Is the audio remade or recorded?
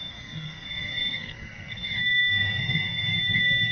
remade